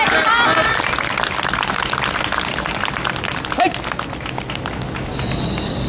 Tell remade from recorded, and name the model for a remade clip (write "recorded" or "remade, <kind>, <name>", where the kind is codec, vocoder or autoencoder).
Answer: recorded